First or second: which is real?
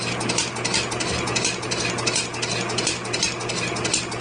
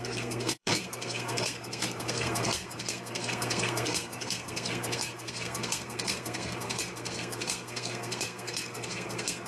first